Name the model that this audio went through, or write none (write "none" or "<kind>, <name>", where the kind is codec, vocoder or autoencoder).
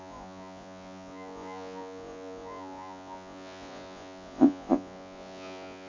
vocoder, Vocos